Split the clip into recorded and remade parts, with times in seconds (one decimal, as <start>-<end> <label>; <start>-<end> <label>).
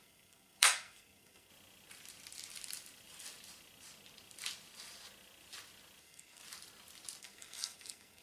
0.0-1.5 remade; 1.5-6.0 recorded; 6.0-6.4 remade; 6.4-7.2 recorded; 7.2-8.2 remade